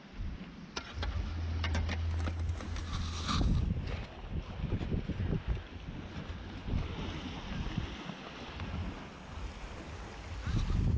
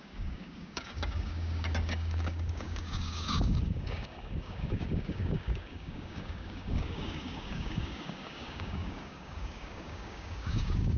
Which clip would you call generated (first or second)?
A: second